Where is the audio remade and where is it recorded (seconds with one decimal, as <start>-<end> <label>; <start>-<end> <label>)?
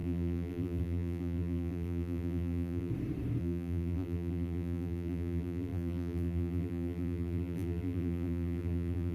0.0-2.9 remade; 2.9-3.4 recorded; 3.4-9.1 remade